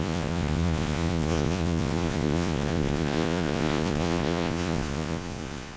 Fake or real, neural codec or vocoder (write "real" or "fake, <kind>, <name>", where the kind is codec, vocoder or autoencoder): fake, vocoder, Vocos